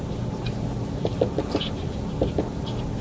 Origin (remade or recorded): recorded